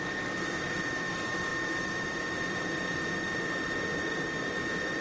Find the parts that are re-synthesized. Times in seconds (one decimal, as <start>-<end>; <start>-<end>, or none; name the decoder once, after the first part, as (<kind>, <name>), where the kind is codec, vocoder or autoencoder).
0.0-5.0 (vocoder, BigVGAN v2)